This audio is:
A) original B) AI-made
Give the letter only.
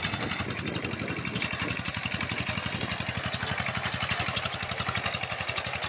A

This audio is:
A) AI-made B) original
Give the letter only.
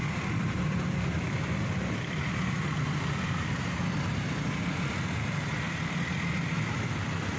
B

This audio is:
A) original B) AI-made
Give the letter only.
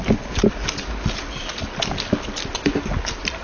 A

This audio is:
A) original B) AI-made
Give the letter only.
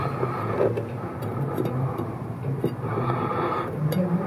A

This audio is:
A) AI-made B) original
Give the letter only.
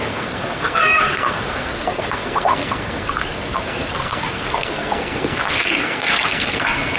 A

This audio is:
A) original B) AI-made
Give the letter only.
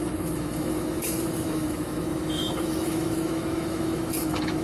B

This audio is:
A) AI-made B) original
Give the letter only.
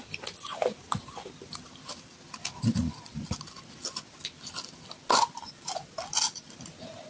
B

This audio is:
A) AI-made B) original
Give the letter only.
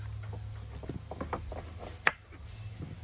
B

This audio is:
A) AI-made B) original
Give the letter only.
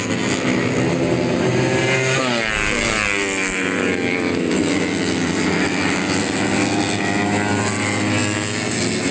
B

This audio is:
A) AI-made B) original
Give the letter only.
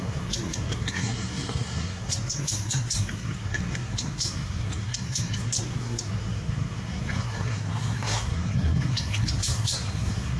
A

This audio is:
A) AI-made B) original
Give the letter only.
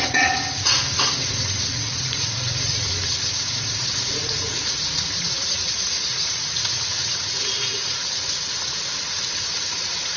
A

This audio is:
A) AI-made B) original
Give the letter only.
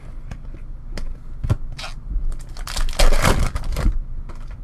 B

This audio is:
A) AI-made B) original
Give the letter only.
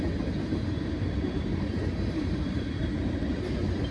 A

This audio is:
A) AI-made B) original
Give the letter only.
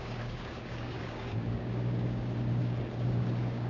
A